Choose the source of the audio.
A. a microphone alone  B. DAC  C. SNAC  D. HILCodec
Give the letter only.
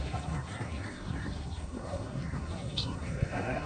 C